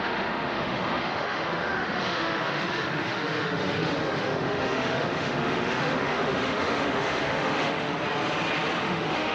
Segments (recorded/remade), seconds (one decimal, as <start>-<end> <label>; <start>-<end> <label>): 0.0-7.9 remade; 7.9-8.8 recorded; 8.8-9.3 remade

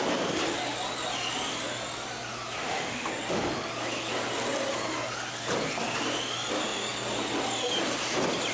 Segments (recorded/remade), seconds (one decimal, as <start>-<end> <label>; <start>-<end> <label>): 0.0-2.6 recorded; 2.6-3.1 remade; 3.1-8.5 recorded

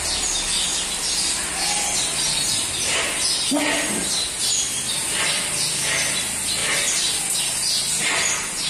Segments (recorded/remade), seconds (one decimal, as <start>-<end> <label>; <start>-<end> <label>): 0.0-6.6 recorded; 6.6-7.2 remade; 7.2-8.7 recorded